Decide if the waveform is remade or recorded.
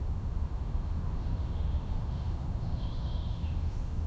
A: remade